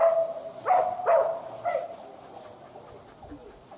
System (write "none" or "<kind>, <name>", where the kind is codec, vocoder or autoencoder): none